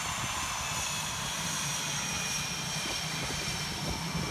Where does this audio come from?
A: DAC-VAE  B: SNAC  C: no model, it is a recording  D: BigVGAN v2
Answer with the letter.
C